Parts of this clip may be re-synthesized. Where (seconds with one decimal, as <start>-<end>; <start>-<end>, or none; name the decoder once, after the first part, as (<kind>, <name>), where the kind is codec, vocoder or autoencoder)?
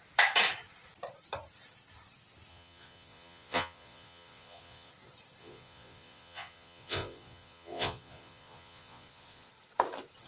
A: 2.5-4.9 (vocoder, Vocos); 5.4-9.5